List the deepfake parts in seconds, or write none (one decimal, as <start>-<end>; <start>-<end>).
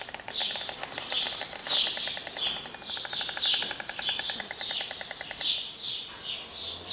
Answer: none